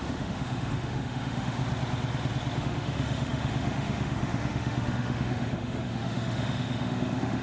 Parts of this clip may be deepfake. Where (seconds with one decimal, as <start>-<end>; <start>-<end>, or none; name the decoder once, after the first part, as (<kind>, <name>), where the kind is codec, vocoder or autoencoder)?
0.0-1.6 (autoencoder, DAC-VAE); 2.6-7.4